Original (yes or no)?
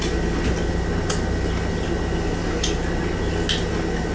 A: yes